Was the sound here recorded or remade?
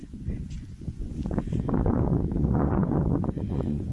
remade